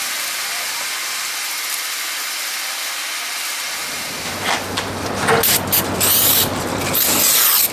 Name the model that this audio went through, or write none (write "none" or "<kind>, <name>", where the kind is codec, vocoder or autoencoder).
none